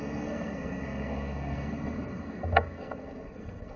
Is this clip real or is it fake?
fake